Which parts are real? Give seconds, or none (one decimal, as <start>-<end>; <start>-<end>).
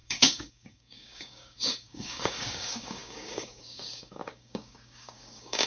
none